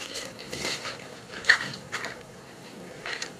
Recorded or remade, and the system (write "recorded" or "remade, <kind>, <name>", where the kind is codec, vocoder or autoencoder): remade, codec, SNAC